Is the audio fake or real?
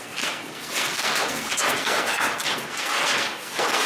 fake